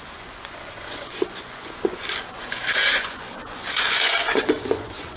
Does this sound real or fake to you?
fake